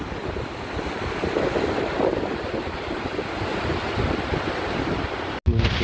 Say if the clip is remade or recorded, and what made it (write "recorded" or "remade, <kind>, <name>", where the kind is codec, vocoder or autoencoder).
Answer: recorded